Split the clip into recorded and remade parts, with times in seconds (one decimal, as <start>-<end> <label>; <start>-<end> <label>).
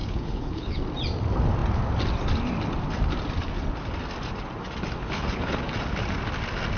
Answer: 0.0-0.8 remade; 0.8-5.0 recorded; 5.0-5.6 remade; 5.6-6.8 recorded